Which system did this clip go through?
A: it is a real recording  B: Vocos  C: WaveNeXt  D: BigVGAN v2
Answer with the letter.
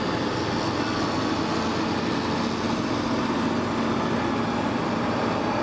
A